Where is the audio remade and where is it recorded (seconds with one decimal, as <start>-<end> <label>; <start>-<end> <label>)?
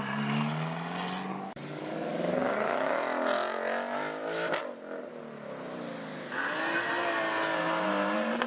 0.0-1.3 recorded; 1.3-2.9 remade; 2.9-8.5 recorded